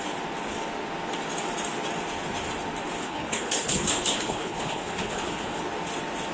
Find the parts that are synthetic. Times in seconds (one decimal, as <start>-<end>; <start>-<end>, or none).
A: 3.0-5.6